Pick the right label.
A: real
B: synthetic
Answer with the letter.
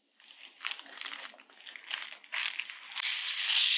A